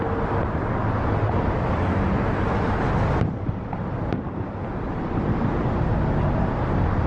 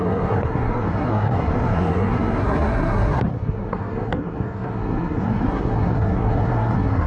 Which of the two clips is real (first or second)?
first